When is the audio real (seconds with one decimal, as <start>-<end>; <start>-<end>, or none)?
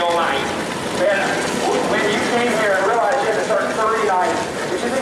0.0-0.4; 3.3-5.0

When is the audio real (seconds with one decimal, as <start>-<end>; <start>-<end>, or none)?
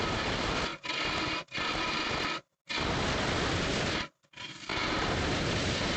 0.7-4.3; 4.7-6.0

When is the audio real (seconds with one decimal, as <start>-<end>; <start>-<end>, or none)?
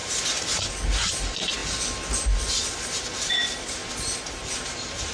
0.0-1.1; 1.6-2.5; 3.8-4.3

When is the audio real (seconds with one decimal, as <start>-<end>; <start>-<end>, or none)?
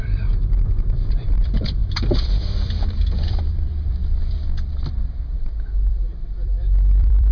none